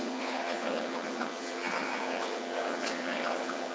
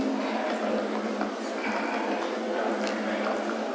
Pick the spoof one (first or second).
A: first